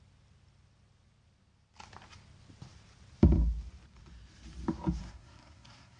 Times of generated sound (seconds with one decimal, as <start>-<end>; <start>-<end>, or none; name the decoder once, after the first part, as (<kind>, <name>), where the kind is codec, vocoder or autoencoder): 5.0-6.0 (codec, SNAC)